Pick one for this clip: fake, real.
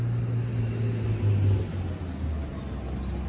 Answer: real